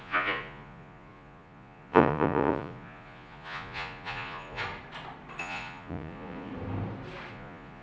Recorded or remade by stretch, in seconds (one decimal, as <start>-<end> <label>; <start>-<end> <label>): 0.0-4.6 remade; 4.6-5.4 recorded; 5.4-6.5 remade; 6.5-7.3 recorded; 7.3-7.8 remade